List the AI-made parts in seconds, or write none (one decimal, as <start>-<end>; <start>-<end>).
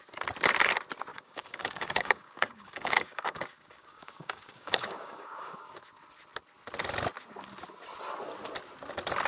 1.1-5.8